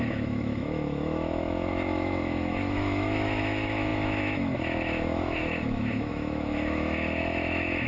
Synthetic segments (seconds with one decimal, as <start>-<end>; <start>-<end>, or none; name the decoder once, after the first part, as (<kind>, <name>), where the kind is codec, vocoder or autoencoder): 0.0-7.9 (autoencoder, DAC-VAE)